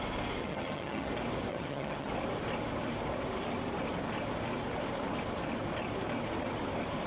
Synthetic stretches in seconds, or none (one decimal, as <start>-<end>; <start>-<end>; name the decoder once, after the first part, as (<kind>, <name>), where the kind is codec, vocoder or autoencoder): 0.4-1.1 (vocoder, HiFi-GAN); 1.5-2.1